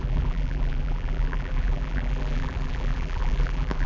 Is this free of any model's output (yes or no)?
no